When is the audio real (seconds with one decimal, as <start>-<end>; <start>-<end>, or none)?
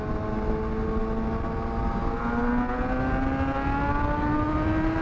0.0-5.0